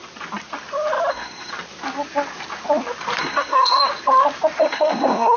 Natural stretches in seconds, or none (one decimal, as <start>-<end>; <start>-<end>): 0.0-1.1; 1.5-3.2; 3.9-4.6